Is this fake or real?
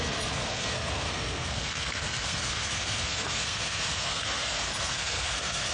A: fake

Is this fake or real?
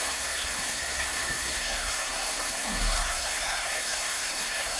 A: fake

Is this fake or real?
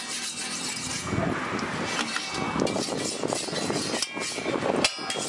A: real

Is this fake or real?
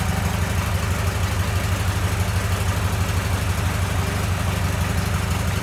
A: real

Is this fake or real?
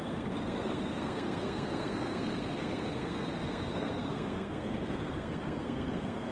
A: fake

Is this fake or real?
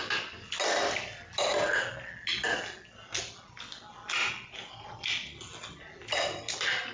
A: real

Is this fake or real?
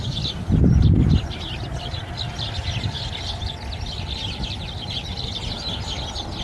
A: real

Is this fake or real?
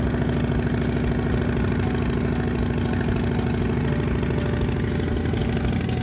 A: real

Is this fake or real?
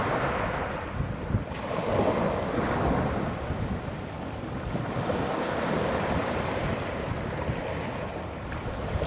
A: real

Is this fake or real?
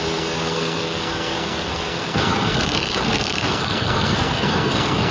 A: fake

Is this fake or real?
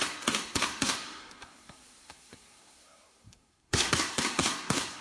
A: fake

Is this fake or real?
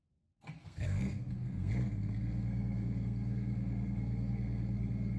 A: fake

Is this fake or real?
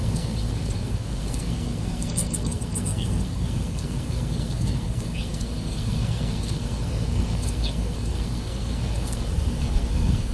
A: fake